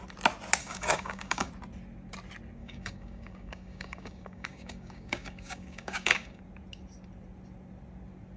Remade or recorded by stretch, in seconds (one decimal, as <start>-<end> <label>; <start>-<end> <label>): 0.0-0.6 recorded; 0.6-1.5 remade; 1.5-2.6 recorded; 2.6-6.4 remade; 6.4-8.4 recorded